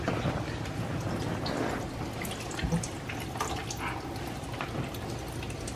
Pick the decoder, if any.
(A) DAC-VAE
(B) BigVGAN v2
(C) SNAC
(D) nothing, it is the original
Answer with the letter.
D